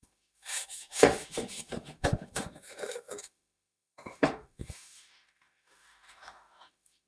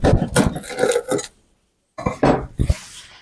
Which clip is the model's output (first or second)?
first